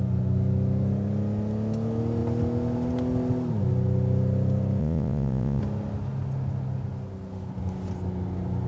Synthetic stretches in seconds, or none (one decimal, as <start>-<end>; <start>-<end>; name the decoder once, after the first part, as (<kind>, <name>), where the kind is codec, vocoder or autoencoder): 4.8-5.6 (vocoder, Vocos)